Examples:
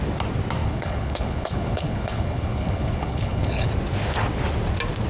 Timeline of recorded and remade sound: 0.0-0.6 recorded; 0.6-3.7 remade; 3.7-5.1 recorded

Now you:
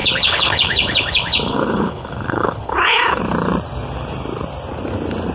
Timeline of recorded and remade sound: 0.0-3.2 remade; 3.2-5.3 recorded

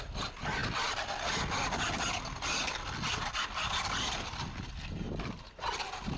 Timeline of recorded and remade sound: 0.0-6.2 recorded

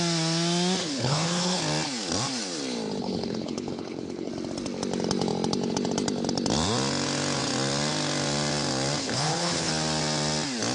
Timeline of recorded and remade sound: 0.0-0.8 recorded; 0.8-1.6 remade; 1.6-3.0 recorded; 3.0-4.3 remade; 4.3-9.0 recorded; 9.0-9.7 remade; 9.7-10.7 recorded

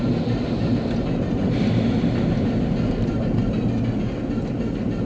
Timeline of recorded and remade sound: 0.0-5.1 recorded